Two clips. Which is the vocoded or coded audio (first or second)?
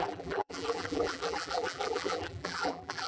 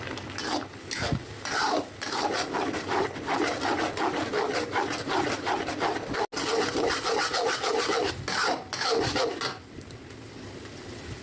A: first